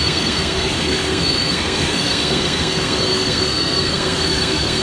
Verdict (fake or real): fake